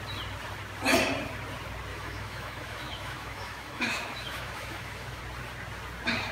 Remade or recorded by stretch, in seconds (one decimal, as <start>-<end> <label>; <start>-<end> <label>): 0.0-1.9 recorded; 1.9-5.2 remade; 5.2-6.3 recorded